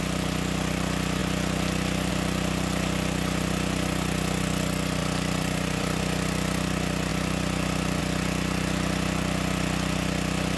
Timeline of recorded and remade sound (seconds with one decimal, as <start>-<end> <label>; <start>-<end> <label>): 0.0-5.0 recorded; 5.0-6.0 remade; 6.0-10.6 recorded